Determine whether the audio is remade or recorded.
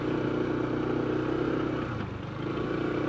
recorded